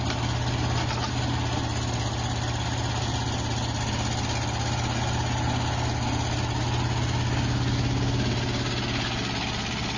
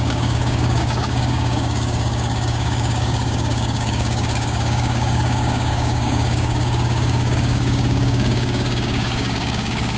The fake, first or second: second